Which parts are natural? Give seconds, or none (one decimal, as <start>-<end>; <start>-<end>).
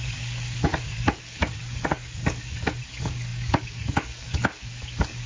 none